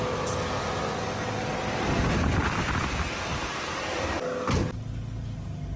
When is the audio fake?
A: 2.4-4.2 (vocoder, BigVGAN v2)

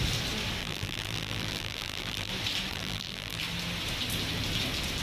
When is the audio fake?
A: 0.6-2.3 (vocoder, BigVGAN v2); 2.7-3.4

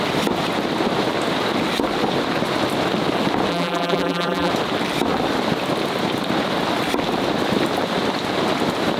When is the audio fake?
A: 3.5-4.5 (vocoder, BigVGAN v2)

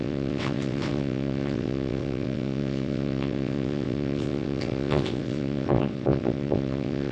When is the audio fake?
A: 0.0-7.1 (vocoder, WaveNeXt)

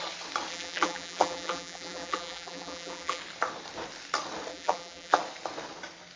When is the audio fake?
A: 0.5-3.2 (vocoder, BigVGAN v2); 4.5-5.2